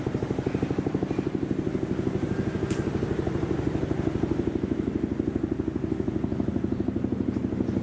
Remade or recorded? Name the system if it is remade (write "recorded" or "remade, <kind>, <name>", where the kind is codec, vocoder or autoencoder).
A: recorded